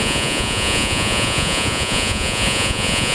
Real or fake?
fake